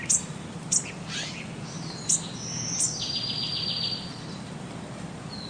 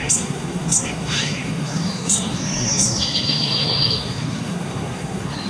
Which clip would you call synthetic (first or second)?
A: second